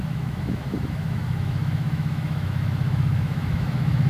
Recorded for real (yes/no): no